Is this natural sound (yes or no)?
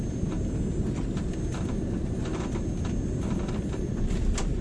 yes